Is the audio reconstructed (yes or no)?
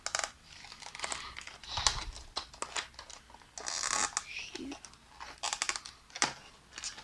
no